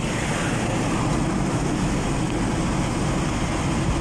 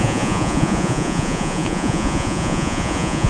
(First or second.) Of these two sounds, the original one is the first